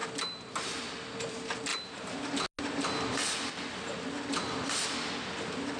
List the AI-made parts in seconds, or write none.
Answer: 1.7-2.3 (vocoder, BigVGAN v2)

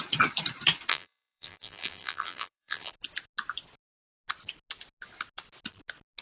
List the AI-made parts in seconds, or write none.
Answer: 0.9-2.9 (vocoder, BigVGAN v2)